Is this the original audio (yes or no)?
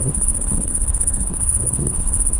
no